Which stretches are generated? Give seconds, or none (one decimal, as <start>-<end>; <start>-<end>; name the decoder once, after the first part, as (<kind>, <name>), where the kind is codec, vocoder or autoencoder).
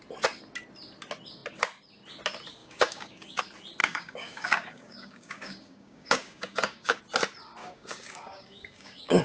2.6-3.4 (codec, DAC); 3.8-7.0; 7.6-9.2